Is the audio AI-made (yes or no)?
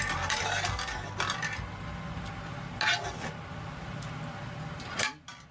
no